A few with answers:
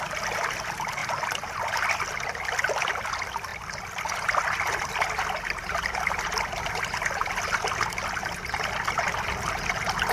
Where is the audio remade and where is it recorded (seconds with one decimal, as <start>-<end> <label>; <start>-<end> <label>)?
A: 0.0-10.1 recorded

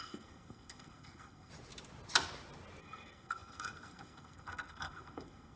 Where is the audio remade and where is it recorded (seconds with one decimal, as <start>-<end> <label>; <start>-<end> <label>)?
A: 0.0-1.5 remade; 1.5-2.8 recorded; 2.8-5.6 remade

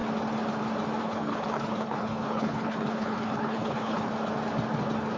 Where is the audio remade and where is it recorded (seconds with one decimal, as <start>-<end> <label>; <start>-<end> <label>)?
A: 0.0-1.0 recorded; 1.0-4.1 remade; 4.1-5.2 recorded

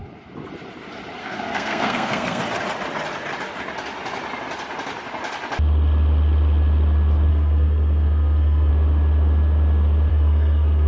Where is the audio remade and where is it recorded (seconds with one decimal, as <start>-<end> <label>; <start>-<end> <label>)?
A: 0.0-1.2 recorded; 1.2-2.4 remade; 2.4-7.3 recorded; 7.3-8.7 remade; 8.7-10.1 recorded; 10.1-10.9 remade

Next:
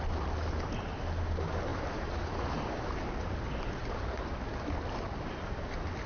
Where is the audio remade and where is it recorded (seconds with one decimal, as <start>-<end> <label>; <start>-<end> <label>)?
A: 0.0-1.7 recorded; 1.7-3.3 remade; 3.3-3.8 recorded; 3.8-4.3 remade; 4.3-6.1 recorded

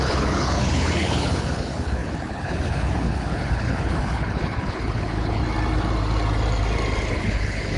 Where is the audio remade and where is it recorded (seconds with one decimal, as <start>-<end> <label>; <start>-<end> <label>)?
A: 0.0-5.4 remade; 5.4-7.1 recorded; 7.1-7.8 remade